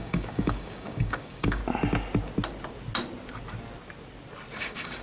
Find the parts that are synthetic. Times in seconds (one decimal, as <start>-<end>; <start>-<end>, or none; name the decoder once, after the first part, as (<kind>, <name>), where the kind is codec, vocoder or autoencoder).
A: 0.0-1.6 (codec, DAC); 4.6-5.0